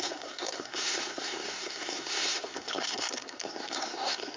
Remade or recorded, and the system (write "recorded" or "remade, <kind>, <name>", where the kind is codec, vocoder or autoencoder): remade, codec, SNAC